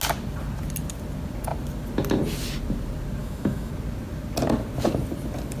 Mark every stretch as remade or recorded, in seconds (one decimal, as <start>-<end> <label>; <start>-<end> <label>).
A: 0.0-3.2 recorded; 3.2-3.7 remade; 3.7-5.6 recorded